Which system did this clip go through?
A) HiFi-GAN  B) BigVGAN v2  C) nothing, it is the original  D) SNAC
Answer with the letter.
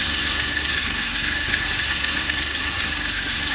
D